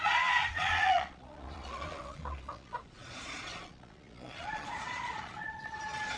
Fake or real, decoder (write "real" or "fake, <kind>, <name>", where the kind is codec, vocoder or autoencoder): fake, vocoder, Vocos